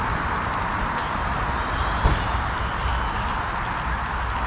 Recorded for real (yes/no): yes